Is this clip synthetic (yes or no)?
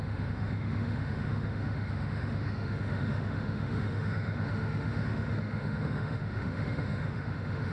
yes